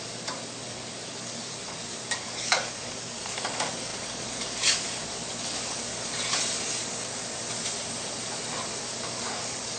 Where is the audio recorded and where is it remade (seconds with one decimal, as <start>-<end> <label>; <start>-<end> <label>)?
0.0-5.9 remade; 5.9-6.8 recorded; 6.8-7.2 remade; 7.2-8.8 recorded; 8.8-9.8 remade

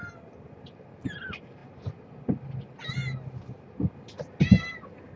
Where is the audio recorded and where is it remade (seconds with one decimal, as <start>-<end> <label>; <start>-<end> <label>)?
0.0-5.2 recorded

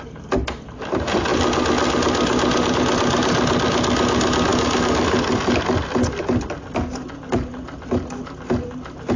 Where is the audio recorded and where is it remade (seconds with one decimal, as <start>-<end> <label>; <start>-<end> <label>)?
0.0-9.2 recorded